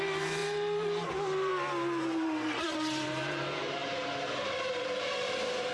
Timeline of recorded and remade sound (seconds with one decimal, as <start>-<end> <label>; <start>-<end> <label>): 0.0-1.5 remade; 1.5-2.0 recorded; 2.0-5.7 remade